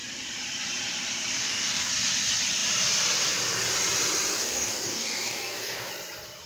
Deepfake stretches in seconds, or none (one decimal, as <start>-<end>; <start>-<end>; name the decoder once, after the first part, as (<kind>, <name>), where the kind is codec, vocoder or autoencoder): 1.4-1.9 (codec, DAC); 4.3-5.9